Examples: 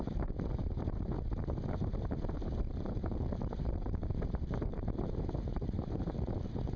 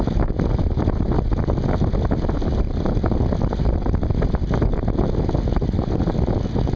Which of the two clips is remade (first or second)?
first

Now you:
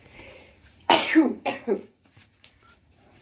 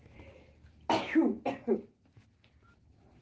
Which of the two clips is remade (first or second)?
first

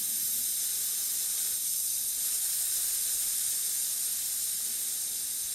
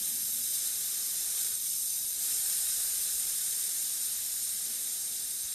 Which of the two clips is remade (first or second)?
second